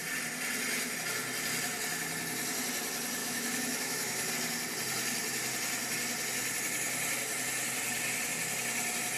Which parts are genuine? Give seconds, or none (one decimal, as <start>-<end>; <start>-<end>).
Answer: 0.0-3.2; 4.3-9.2